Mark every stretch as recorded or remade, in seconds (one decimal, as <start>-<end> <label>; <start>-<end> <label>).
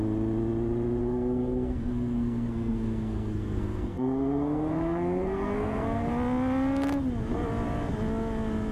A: 0.0-1.0 recorded; 1.0-6.1 remade; 6.1-8.7 recorded